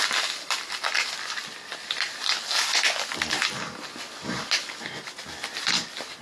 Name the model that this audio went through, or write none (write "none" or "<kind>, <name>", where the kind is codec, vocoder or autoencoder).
none